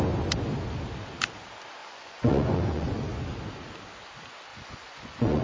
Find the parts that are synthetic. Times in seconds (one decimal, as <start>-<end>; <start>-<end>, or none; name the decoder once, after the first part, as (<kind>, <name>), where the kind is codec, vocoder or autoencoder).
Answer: 1.8-3.0 (vocoder, Vocos); 4.5-5.4